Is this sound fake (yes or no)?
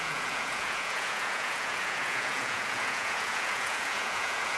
yes